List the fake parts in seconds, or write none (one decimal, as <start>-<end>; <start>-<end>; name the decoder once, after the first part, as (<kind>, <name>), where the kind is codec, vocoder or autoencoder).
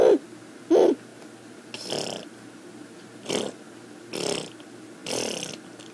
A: none